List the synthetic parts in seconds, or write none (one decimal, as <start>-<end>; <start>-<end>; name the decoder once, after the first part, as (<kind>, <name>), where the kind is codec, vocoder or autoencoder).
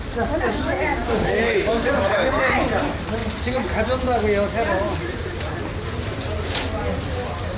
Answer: 0.9-2.3 (codec, DAC)